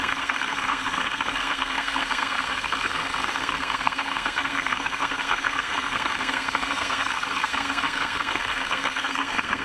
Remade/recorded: remade